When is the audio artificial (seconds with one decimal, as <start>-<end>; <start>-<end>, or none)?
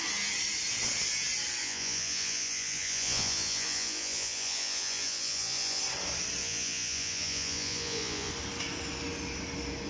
1.6-5.8; 6.4-8.3